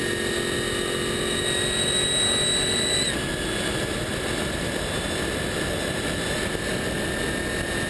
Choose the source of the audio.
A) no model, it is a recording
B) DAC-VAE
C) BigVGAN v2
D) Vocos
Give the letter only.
A